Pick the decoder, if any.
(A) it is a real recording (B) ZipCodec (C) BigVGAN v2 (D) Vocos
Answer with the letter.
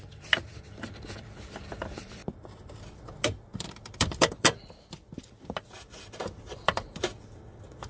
C